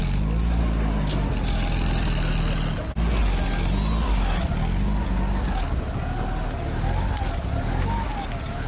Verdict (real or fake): real